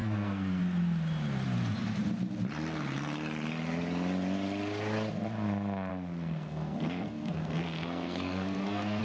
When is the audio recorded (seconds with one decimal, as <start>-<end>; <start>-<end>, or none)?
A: 0.6-5.9